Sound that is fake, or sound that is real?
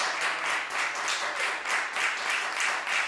real